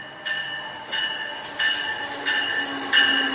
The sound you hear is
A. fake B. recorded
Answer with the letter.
B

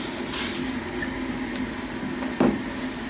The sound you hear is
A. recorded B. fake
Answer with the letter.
A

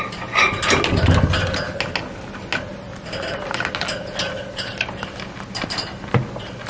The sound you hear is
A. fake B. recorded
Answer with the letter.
B